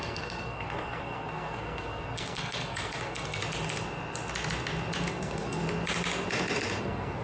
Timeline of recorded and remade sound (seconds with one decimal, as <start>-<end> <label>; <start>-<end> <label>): 0.0-3.4 remade; 3.4-5.1 recorded; 5.1-5.6 remade; 5.6-6.8 recorded; 6.8-7.2 remade